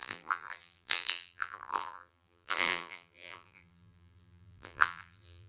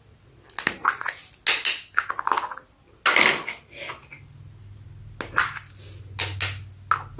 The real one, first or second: second